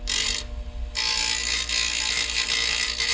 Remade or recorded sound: recorded